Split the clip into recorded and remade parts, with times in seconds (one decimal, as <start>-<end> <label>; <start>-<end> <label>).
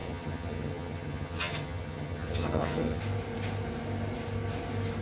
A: 0.0-3.0 remade; 3.0-5.0 recorded